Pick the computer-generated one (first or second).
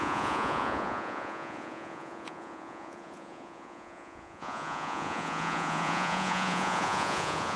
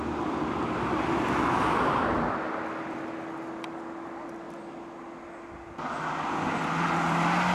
first